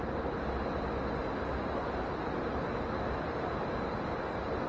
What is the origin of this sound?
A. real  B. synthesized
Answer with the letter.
A